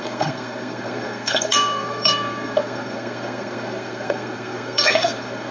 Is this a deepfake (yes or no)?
yes